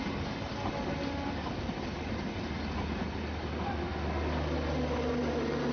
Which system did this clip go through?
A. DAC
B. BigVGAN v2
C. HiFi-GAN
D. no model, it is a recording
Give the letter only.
D